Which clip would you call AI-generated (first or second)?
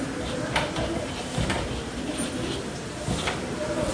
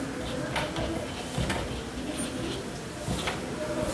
first